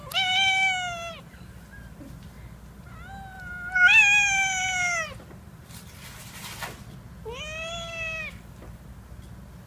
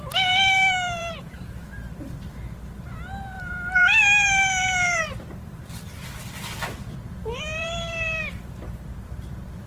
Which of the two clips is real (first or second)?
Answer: first